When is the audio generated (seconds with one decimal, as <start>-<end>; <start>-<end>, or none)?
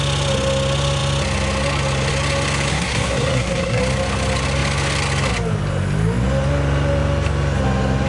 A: 2.7-3.8